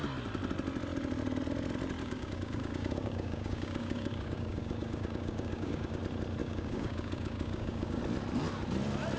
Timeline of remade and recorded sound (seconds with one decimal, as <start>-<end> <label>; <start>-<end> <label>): 0.0-2.0 recorded; 2.0-6.0 remade; 6.0-6.4 recorded; 6.4-8.0 remade; 8.0-9.2 recorded